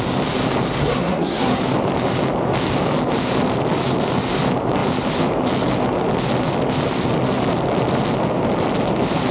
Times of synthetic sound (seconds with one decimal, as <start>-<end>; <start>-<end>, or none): 0.8-1.6